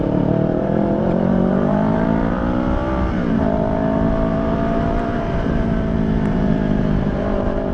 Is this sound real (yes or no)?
no